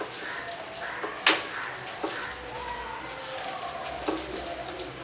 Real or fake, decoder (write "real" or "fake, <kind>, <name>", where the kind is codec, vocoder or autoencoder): real